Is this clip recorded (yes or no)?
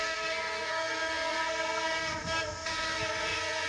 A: no